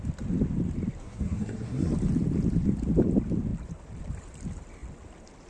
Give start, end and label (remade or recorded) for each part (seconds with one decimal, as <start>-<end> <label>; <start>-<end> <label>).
0.0-1.0 recorded; 1.0-1.9 remade; 1.9-5.5 recorded